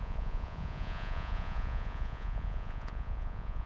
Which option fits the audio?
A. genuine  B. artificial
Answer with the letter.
B